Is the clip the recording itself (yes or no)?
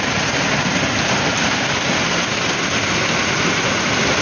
yes